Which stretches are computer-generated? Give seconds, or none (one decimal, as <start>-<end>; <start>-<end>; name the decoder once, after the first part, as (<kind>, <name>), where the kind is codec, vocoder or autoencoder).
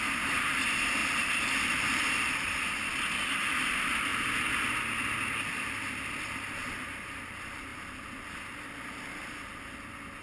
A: none